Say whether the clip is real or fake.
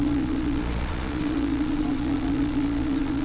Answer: fake